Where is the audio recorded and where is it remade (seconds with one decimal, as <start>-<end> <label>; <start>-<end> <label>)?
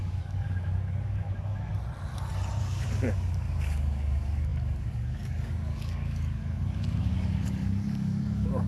0.0-1.7 remade; 1.7-2.6 recorded; 2.6-8.7 remade